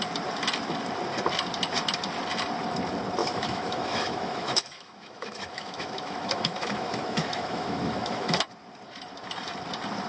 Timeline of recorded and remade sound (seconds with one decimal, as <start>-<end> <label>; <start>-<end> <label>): 0.0-3.2 recorded; 3.2-8.4 remade; 8.4-10.1 recorded